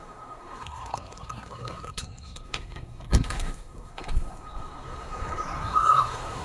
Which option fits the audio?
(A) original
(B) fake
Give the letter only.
B